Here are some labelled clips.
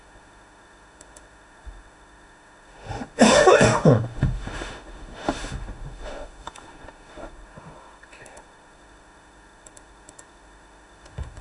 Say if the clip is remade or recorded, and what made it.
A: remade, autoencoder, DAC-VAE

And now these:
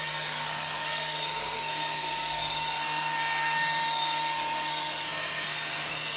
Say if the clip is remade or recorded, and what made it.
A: remade, codec, SNAC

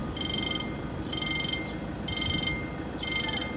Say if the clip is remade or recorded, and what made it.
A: recorded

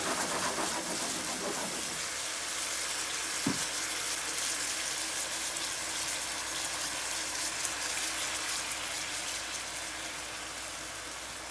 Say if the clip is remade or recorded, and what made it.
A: recorded